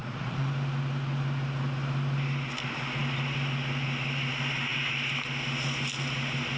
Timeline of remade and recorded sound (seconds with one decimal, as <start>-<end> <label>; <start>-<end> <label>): 0.0-0.5 remade; 0.5-6.6 recorded